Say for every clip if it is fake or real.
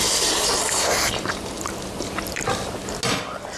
real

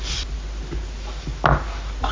real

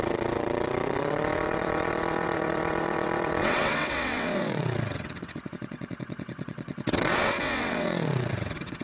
fake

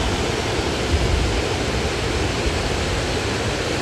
real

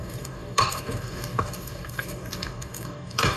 fake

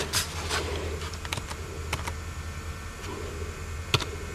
real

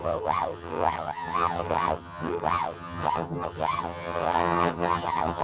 fake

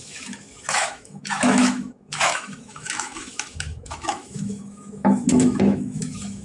fake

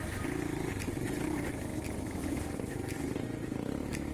real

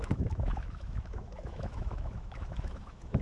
fake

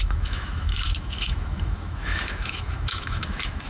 fake